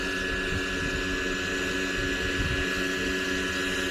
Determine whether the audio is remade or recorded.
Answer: recorded